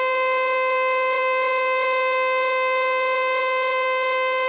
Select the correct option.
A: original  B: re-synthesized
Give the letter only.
B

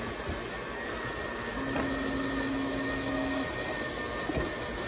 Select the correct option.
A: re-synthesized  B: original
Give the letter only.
B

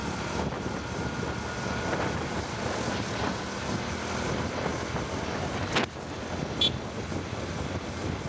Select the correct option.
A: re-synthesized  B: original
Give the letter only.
B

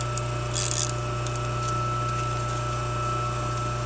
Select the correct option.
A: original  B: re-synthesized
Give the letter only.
A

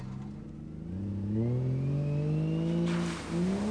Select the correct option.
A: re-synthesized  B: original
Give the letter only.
B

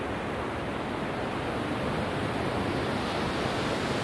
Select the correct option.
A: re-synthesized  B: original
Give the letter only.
B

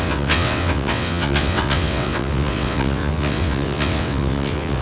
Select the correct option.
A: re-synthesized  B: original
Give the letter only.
A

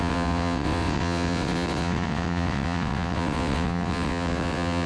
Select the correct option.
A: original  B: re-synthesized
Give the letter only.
B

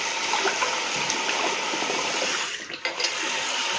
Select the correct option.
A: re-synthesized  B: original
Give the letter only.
B